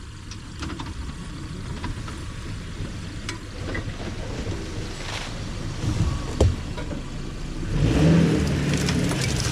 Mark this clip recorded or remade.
recorded